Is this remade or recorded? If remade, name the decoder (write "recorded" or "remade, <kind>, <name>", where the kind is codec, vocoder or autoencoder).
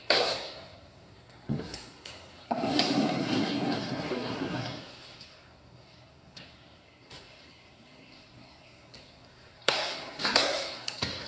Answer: remade, codec, SNAC